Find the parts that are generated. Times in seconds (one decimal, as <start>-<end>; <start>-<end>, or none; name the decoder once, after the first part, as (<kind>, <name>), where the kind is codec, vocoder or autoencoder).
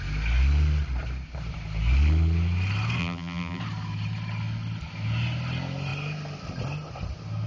3.0-3.6 (vocoder, BigVGAN v2)